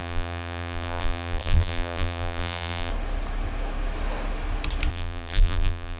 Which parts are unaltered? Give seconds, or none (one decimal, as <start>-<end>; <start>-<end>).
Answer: 2.9-4.9